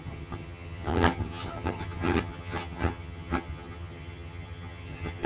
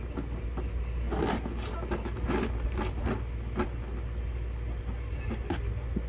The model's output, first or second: first